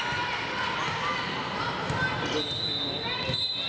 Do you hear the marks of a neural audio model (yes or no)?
no